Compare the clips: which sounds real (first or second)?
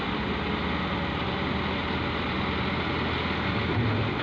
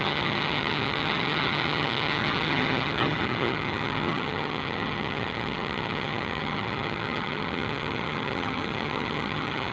first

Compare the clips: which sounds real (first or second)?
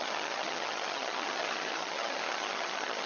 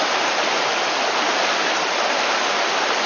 second